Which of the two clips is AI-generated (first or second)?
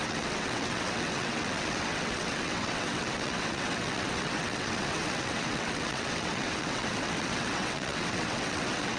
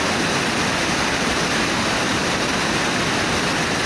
first